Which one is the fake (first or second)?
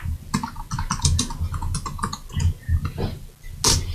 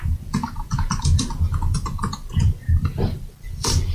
second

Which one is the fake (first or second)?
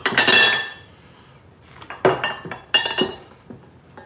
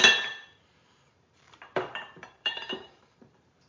second